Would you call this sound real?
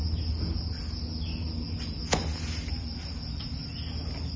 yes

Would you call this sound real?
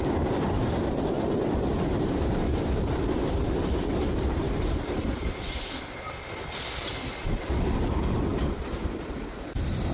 no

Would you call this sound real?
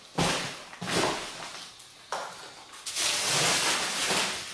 yes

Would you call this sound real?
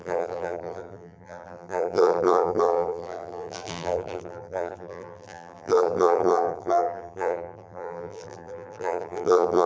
no